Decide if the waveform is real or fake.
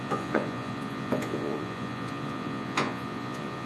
fake